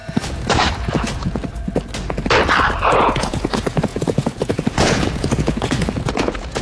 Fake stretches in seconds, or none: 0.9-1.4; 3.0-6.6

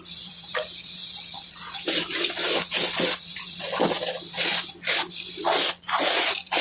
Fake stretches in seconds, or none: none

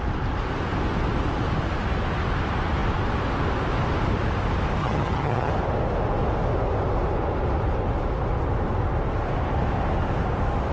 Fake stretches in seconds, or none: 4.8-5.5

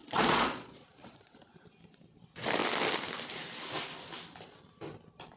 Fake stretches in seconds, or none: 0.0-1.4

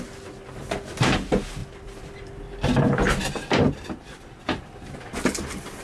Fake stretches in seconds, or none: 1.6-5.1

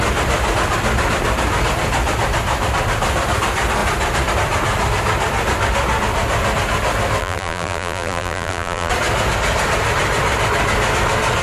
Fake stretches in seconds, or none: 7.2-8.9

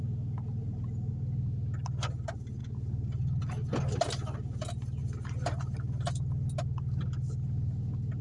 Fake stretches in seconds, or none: none